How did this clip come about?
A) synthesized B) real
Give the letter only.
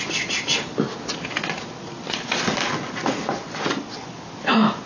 B